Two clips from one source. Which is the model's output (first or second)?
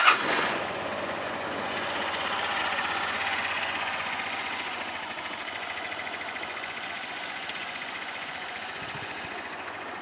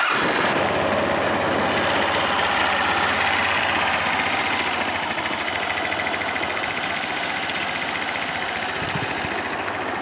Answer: first